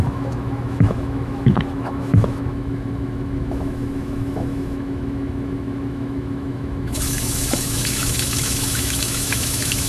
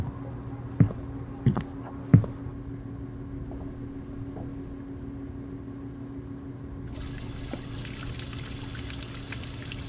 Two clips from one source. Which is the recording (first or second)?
second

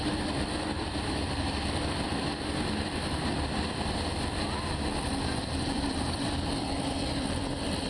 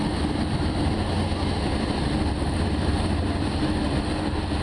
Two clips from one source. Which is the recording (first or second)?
second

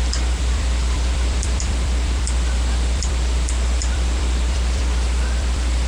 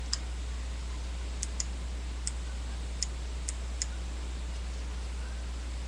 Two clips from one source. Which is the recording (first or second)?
second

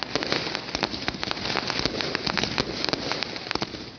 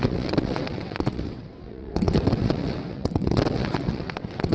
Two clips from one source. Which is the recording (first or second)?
first